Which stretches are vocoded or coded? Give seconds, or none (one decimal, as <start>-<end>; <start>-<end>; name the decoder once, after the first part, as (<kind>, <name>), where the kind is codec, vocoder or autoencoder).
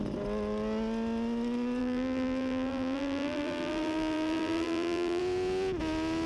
1.8-5.2 (vocoder, BigVGAN v2)